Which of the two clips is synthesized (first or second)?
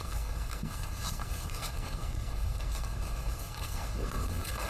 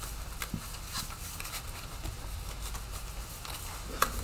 first